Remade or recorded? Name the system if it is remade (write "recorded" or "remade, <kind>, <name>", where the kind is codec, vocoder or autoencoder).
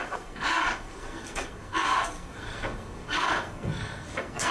remade, codec, SNAC